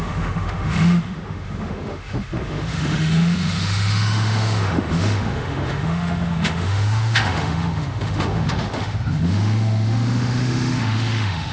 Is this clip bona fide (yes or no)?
no